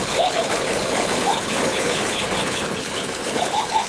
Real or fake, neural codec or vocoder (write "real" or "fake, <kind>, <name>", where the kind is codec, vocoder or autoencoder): fake, codec, HILCodec